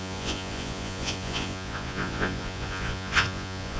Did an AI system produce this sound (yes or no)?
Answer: yes